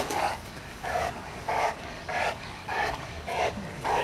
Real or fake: fake